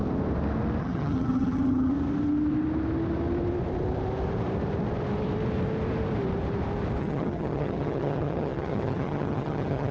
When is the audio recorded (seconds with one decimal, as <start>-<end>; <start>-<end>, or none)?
0.0-0.8; 1.9-7.0